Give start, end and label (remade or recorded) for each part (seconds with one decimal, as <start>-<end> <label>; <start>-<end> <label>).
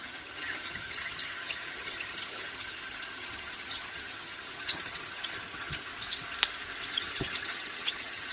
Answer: 0.0-5.9 remade; 5.9-6.9 recorded; 6.9-8.3 remade